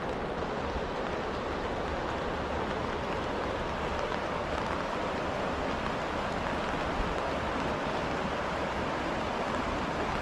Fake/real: real